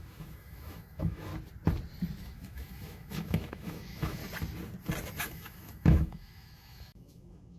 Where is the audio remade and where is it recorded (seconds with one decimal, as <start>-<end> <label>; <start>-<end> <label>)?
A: 0.0-1.3 remade; 1.3-2.2 recorded; 2.2-4.2 remade; 4.2-5.2 recorded; 5.2-7.6 remade